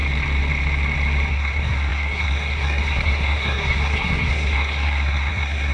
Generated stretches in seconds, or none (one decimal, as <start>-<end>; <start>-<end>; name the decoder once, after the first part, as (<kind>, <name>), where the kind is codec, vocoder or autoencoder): 1.3-5.7 (codec, SNAC)